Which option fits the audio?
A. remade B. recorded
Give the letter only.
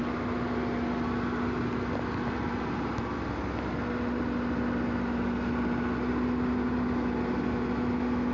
B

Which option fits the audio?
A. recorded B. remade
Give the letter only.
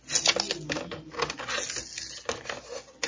A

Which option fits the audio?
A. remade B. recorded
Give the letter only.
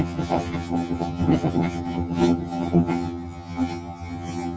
A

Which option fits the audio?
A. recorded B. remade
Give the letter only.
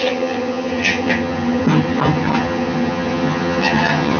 B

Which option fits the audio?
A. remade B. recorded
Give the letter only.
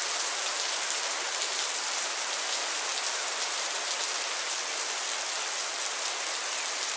B